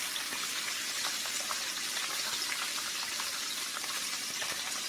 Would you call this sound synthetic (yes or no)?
no